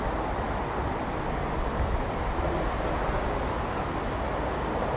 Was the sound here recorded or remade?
recorded